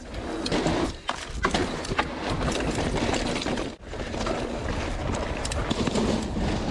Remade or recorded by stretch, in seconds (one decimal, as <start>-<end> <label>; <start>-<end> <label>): 0.0-6.7 recorded